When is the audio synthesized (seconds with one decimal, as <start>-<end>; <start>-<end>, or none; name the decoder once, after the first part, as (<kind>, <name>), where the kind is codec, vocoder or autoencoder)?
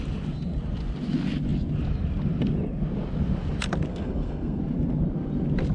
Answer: 3.9-4.6 (codec, SNAC)